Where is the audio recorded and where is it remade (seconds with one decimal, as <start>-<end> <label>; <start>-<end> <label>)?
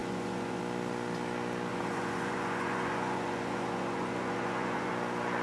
0.0-0.6 remade; 0.6-1.7 recorded; 1.7-4.9 remade; 4.9-5.4 recorded